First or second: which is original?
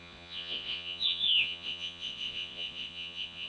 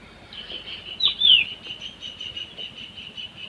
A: second